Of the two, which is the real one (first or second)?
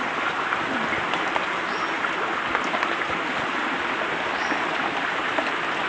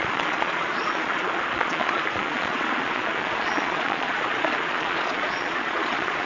first